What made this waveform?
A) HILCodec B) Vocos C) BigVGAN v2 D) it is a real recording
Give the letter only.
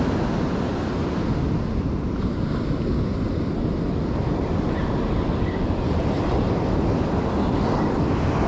D